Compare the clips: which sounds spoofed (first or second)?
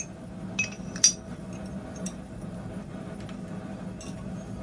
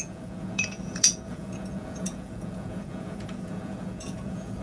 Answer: second